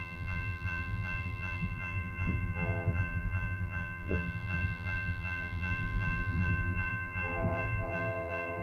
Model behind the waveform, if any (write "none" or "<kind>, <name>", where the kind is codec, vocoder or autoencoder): vocoder, BigVGAN v2